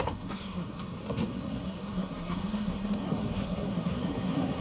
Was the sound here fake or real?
fake